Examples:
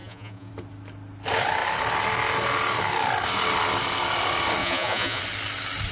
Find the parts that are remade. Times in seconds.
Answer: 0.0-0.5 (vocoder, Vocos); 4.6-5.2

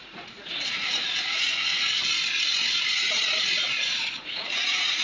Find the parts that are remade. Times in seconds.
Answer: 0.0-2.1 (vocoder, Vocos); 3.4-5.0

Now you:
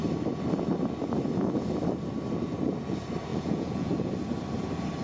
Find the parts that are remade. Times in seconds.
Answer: 3.3-4.1 (vocoder, Vocos)

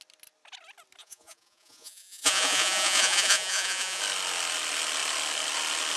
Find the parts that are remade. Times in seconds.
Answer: 1.0-4.0 (vocoder, Vocos)

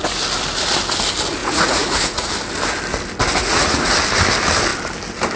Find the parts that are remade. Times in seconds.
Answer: 1.4-2.3 (vocoder, Vocos); 3.4-3.9

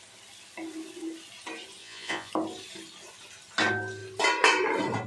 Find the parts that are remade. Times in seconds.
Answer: 1.8-2.3 (vocoder, Vocos)

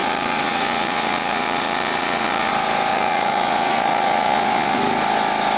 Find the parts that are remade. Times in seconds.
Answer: 0.0-2.5 (vocoder, Vocos); 2.9-4.8

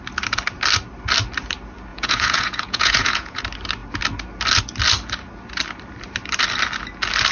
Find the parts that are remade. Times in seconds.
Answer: 1.9-3.4 (vocoder, Vocos)